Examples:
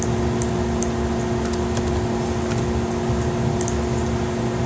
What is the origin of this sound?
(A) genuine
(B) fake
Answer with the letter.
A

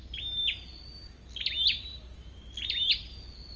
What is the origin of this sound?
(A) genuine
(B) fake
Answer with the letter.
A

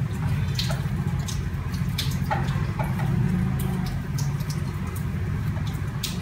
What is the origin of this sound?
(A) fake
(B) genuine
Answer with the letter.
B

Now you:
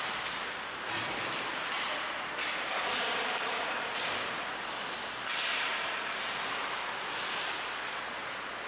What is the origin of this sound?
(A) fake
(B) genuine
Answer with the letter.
B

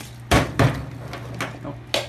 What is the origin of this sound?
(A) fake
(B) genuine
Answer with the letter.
B